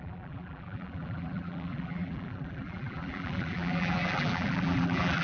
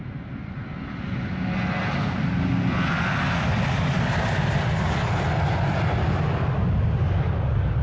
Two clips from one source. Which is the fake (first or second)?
first